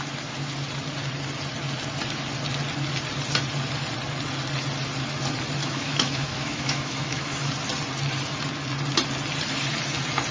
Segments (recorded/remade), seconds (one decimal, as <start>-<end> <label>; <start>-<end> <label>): 0.0-5.6 recorded; 5.6-7.5 remade; 7.5-10.3 recorded